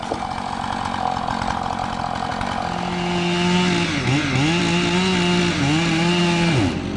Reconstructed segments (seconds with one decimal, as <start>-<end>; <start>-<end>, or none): none